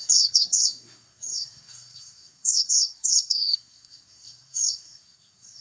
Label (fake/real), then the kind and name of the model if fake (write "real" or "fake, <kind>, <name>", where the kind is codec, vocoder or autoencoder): fake, codec, SNAC